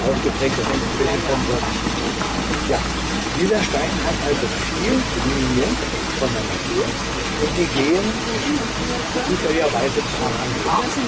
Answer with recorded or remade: recorded